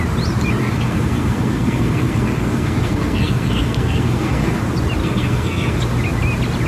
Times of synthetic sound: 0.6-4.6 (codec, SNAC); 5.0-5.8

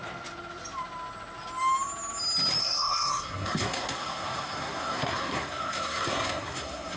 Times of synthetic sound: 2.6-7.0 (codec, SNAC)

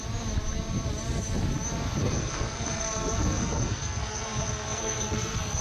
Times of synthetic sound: 2.0-5.6 (codec, SNAC)

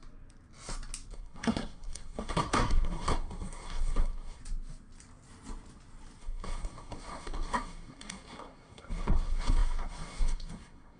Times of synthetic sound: 1.1-4.4 (codec, SNAC); 6.2-11.0

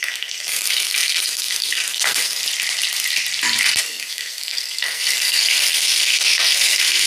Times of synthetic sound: 0.0-2.4 (codec, SNAC); 3.8-7.1